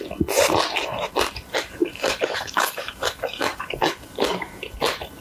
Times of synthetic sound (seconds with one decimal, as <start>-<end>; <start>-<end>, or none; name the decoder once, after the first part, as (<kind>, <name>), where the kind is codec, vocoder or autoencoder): 1.5-4.6 (codec, DAC)